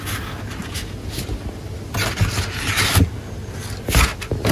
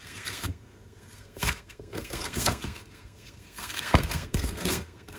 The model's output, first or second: second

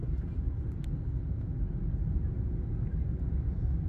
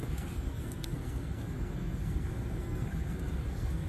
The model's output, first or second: second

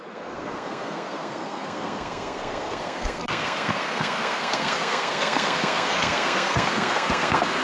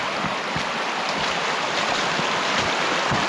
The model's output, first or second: first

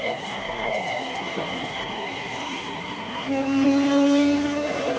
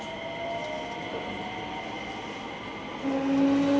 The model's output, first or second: first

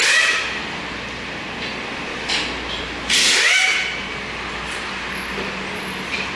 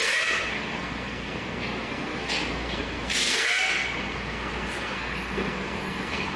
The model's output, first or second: second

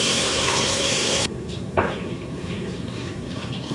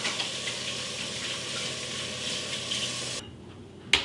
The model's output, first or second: first